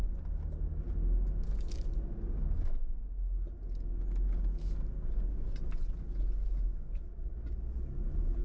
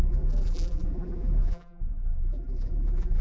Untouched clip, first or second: first